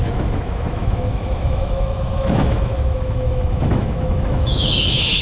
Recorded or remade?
remade